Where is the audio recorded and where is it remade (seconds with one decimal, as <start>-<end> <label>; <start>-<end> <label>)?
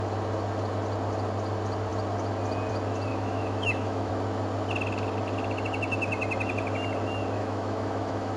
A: 0.0-3.1 recorded; 3.1-4.1 remade; 4.1-7.4 recorded; 7.4-8.4 remade